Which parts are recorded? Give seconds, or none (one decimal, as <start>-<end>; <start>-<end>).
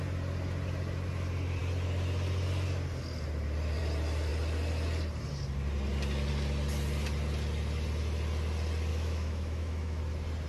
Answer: 0.0-8.9; 10.0-10.5